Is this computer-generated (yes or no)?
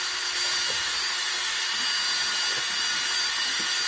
no